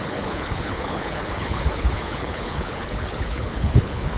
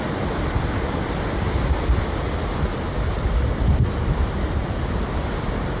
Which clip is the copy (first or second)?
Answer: first